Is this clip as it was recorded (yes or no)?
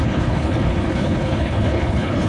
no